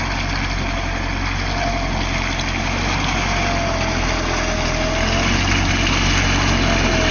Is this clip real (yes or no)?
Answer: yes